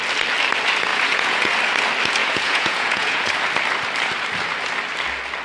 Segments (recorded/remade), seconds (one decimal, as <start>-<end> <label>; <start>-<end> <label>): 0.0-0.9 recorded; 0.9-1.4 remade; 1.4-2.2 recorded; 2.2-3.3 remade; 3.3-5.4 recorded